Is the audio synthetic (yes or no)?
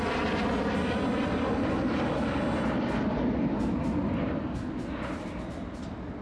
no